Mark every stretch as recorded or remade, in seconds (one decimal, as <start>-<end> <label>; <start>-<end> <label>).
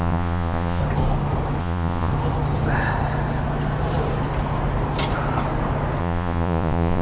0.0-0.8 remade; 0.8-1.6 recorded; 1.6-2.1 remade; 2.1-6.0 recorded; 6.0-7.0 remade